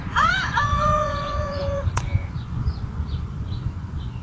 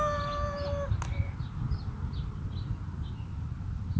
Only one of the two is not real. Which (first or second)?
first